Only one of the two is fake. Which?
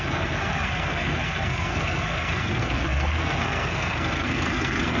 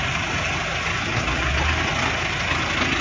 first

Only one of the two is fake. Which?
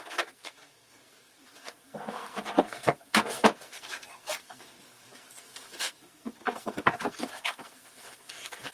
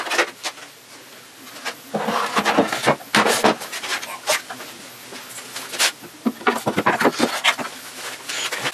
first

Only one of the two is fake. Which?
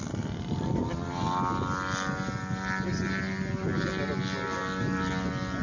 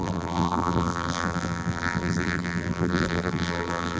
second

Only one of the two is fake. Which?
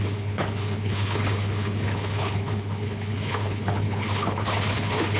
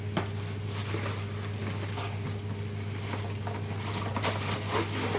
first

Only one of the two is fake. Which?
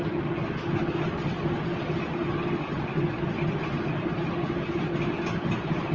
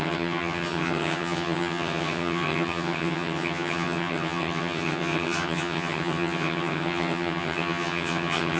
second